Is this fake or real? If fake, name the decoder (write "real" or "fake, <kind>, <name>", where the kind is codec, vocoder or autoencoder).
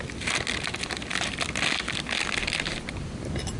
real